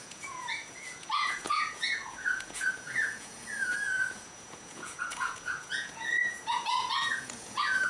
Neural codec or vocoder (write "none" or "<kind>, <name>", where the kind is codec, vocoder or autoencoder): vocoder, Vocos